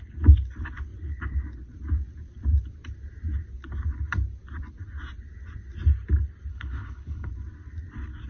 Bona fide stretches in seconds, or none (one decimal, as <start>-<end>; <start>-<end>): 0.0-6.5; 7.3-8.3